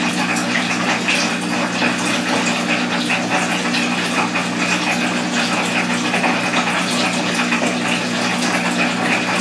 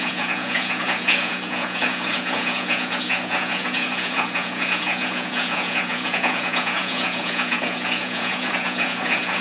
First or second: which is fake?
second